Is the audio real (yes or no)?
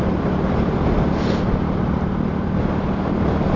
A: yes